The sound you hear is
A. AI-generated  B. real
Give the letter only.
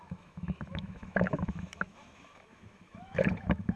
A